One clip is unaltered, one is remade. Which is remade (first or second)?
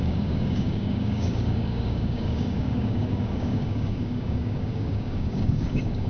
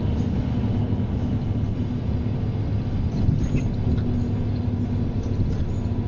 first